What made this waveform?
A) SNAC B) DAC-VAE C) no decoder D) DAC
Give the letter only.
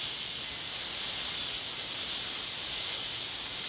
C